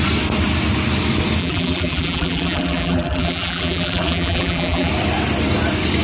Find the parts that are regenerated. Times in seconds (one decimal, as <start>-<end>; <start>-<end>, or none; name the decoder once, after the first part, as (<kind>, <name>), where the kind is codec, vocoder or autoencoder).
1.4-4.9 (vocoder, BigVGAN v2)